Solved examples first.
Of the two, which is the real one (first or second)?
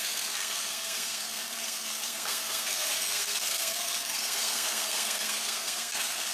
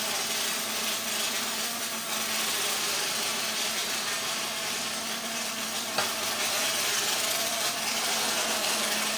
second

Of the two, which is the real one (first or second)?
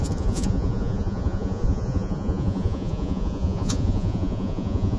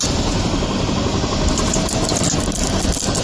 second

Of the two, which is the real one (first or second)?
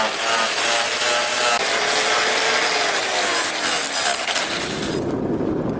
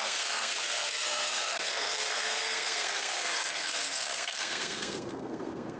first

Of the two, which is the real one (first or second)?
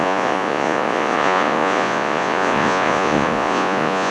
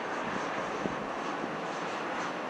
second